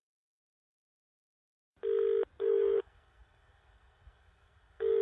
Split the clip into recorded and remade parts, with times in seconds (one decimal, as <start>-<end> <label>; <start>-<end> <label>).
0.0-0.4 remade; 0.4-2.4 recorded; 2.4-5.0 remade